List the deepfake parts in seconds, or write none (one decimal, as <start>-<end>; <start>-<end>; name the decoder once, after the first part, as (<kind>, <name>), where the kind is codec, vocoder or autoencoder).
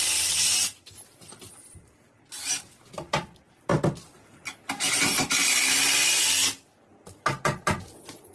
3.7-4.6 (vocoder, BigVGAN v2)